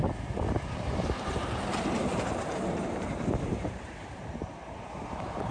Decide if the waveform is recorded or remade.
remade